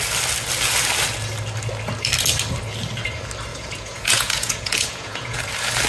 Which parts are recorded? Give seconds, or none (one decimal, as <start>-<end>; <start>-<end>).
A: 0.0-3.5; 5.4-5.9